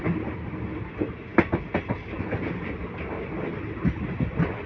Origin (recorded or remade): recorded